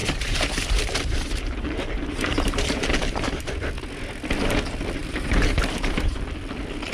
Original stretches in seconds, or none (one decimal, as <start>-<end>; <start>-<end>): 3.4-5.0; 6.2-6.9